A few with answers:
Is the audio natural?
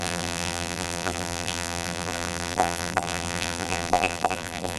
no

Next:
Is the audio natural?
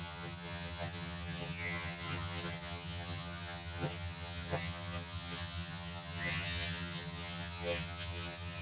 no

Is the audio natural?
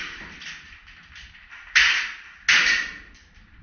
yes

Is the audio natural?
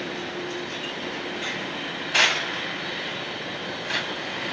yes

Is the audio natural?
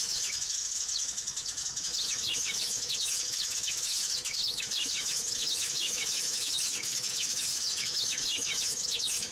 no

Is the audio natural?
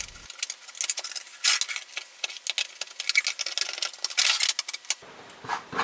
yes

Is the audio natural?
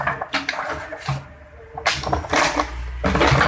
yes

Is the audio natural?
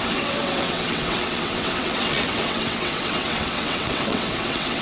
no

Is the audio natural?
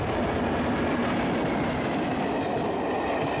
yes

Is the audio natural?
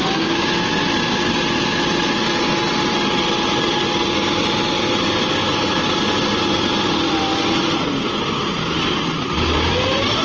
yes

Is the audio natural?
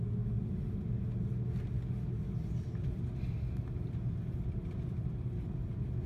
yes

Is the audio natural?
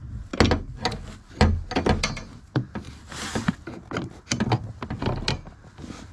yes